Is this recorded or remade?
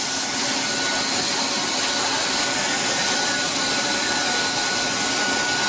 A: recorded